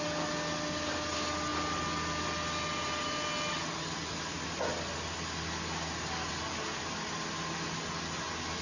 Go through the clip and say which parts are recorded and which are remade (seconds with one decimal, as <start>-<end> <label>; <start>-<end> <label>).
0.0-8.6 recorded